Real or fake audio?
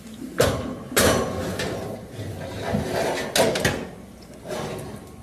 real